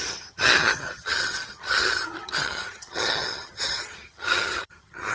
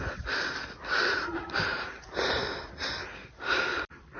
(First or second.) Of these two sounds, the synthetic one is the first